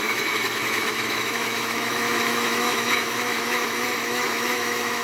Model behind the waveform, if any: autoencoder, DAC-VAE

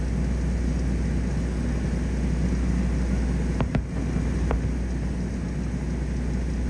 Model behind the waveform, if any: none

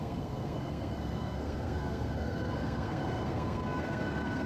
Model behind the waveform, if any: codec, SNAC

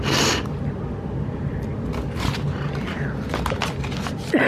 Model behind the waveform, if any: none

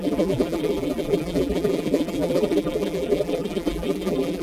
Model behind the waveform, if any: vocoder, BigVGAN v2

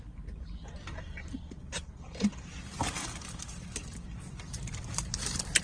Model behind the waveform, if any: vocoder, BigVGAN v2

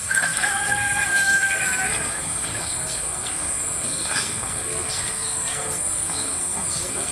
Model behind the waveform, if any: codec, SNAC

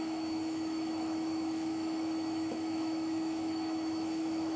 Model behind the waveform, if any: autoencoder, DAC-VAE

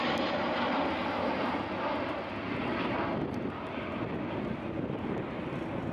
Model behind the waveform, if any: none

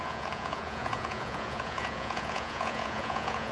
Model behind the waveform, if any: vocoder, Vocos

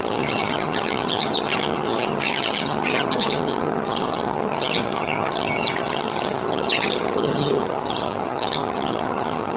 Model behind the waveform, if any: vocoder, HiFi-GAN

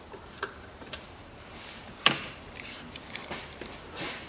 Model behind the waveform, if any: vocoder, BigVGAN v2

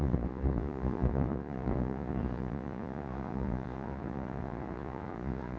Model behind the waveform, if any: vocoder, Vocos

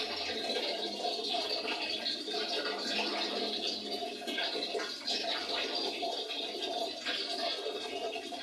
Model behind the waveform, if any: vocoder, BigVGAN v2